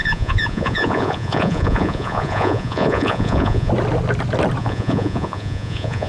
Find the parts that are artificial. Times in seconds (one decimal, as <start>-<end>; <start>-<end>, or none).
0.0-3.7; 4.6-6.1